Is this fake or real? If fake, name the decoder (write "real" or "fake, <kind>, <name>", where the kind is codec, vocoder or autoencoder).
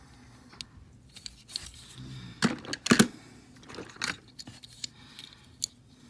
real